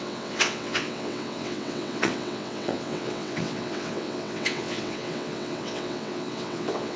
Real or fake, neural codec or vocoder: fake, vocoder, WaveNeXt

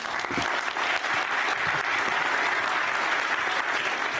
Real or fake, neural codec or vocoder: real